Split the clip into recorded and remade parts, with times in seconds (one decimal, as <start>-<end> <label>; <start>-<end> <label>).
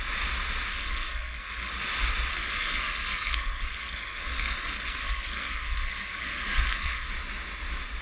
0.0-0.7 recorded; 0.7-1.7 remade; 1.7-2.3 recorded; 2.3-7.1 remade; 7.1-8.0 recorded